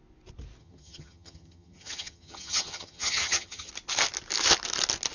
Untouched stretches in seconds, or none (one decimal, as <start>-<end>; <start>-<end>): 0.0-0.6; 3.7-5.1